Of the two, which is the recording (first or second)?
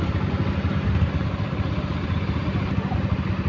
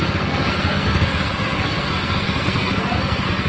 first